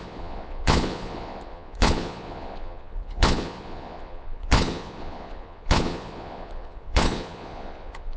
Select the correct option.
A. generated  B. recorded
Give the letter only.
A